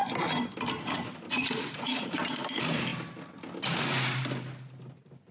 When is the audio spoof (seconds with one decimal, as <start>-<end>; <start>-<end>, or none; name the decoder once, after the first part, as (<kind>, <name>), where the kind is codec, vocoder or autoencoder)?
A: 1.4-2.2 (vocoder, Vocos)